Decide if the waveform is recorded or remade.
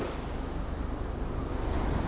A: recorded